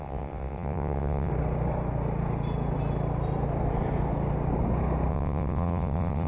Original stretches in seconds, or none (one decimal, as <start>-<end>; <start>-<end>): 1.3-5.1